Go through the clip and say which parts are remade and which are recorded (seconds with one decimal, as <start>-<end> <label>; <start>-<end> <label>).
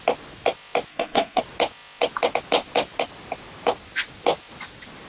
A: 0.0-0.9 recorded; 0.9-1.4 remade; 1.4-5.1 recorded